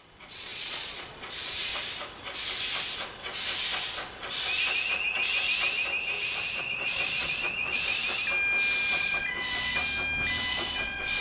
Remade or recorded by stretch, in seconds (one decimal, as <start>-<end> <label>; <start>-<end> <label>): 0.0-1.7 remade; 1.7-6.6 recorded; 6.6-8.0 remade; 8.0-8.9 recorded; 8.9-9.8 remade; 9.8-10.5 recorded; 10.5-11.2 remade